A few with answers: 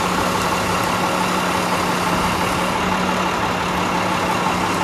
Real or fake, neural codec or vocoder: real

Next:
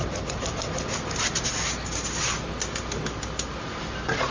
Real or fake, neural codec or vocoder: real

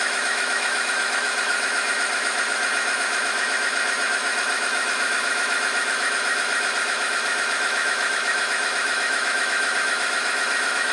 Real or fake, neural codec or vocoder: fake, autoencoder, DAC-VAE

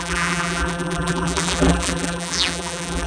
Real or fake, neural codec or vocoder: fake, vocoder, BigVGAN v2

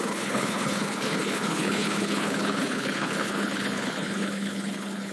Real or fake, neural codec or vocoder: fake, codec, HILCodec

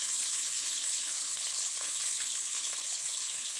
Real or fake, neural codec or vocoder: fake, codec, HILCodec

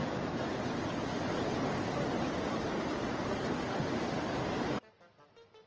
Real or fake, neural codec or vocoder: real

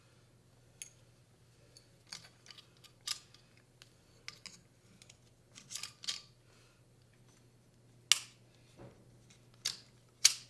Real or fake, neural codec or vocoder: real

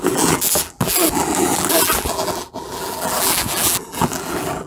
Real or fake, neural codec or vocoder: fake, vocoder, BigVGAN v2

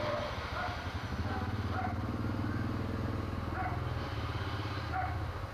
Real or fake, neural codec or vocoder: real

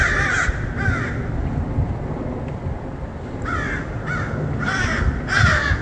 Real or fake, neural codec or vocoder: real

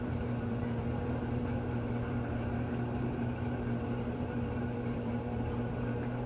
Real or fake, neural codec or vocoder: fake, vocoder, BigVGAN v2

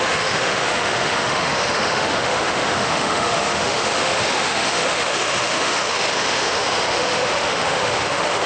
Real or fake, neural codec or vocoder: fake, autoencoder, DAC-VAE